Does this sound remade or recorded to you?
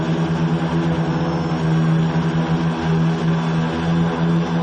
recorded